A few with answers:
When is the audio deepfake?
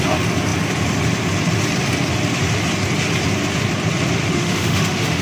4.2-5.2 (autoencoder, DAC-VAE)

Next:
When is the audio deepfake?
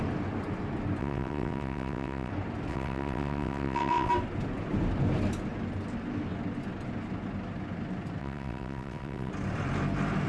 1.0-2.3 (vocoder, WaveNeXt); 2.7-4.1; 8.2-9.3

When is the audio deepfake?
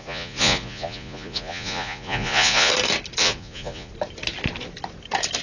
0.0-2.7 (vocoder, Vocos); 3.2-3.9